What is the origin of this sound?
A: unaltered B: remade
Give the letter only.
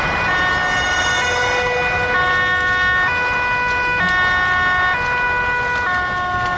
A